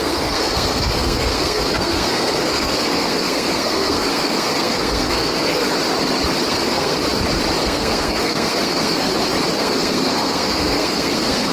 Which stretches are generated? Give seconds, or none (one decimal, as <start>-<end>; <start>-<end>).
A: 0.0-5.7; 6.5-7.0; 7.6-9.1; 9.6-11.5